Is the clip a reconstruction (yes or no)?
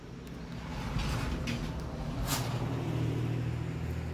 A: no